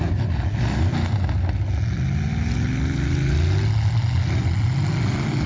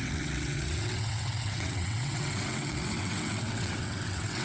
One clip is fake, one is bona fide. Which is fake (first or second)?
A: second